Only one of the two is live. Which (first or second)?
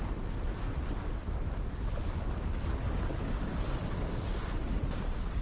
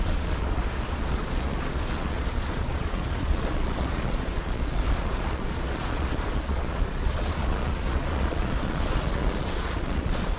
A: first